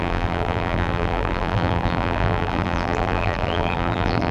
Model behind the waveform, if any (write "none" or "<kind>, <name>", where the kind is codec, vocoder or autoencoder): vocoder, BigVGAN v2